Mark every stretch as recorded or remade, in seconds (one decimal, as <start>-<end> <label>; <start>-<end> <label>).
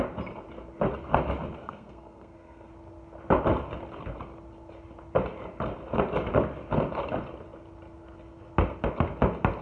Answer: 0.0-1.6 recorded; 1.6-2.7 remade; 2.7-9.6 recorded